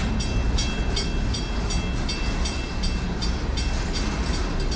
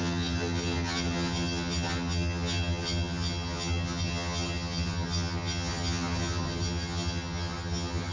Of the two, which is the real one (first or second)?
first